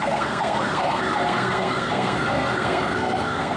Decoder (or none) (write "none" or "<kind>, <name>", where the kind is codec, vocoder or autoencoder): codec, SNAC